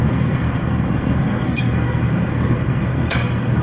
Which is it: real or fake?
fake